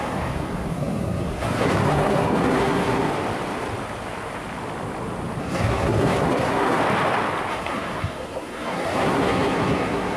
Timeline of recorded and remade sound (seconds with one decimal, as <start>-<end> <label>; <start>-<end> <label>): 0.0-3.1 remade; 3.1-5.4 recorded; 5.4-6.8 remade; 6.8-7.5 recorded; 7.5-10.2 remade